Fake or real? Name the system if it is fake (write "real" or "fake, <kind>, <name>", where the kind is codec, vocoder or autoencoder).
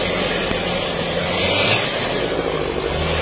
real